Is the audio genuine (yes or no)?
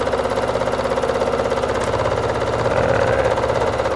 yes